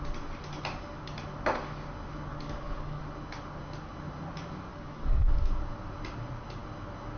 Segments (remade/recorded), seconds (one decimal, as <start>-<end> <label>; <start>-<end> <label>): 0.0-2.3 recorded; 2.3-3.0 remade; 3.0-4.7 recorded; 4.7-5.6 remade; 5.6-7.2 recorded